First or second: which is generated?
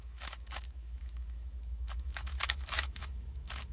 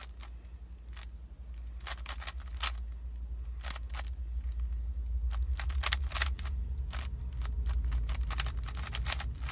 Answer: first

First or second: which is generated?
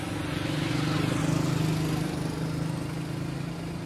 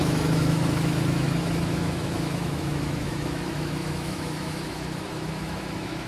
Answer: second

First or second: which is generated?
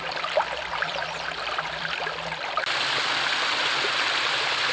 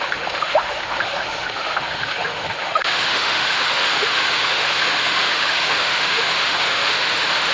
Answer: second